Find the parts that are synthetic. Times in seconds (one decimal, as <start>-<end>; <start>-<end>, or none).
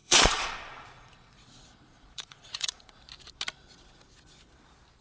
0.0-3.0